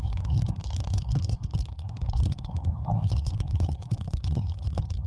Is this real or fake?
fake